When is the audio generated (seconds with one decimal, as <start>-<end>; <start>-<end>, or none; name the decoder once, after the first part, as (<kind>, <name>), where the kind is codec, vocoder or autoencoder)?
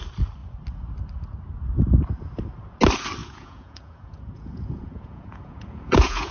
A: 3.2-6.3 (vocoder, Vocos)